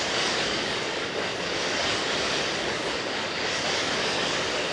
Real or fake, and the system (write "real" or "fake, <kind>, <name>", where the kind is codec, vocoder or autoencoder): fake, codec, DAC